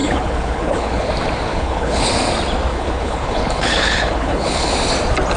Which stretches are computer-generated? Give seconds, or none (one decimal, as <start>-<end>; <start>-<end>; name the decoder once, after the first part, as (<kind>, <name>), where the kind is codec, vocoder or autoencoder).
0.0-1.1 (codec, HILCodec); 1.5-2.1; 2.7-4.7